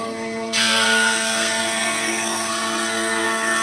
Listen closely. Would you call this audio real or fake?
fake